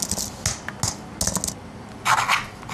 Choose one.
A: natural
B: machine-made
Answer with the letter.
A